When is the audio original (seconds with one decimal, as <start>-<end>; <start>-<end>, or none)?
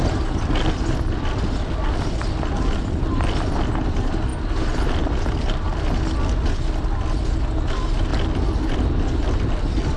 0.0-10.0